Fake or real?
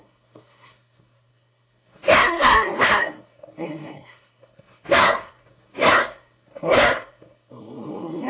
fake